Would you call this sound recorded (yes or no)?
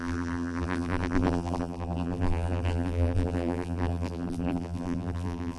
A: no